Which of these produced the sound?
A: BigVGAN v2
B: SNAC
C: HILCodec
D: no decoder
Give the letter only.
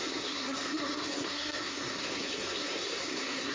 B